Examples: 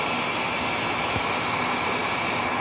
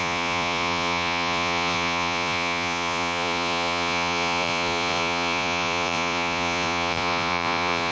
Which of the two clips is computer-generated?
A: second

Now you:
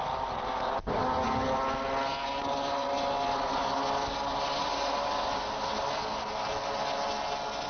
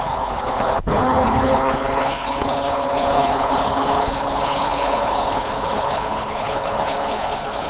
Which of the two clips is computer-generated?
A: second